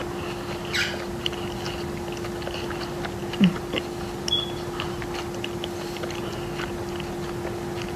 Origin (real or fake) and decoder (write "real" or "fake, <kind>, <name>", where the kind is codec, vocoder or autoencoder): real